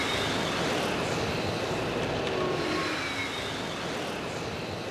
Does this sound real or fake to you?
real